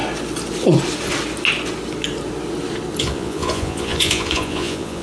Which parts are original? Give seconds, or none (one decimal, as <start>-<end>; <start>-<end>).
0.0-3.0